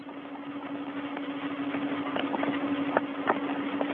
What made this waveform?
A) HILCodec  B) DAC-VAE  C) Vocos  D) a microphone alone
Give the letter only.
D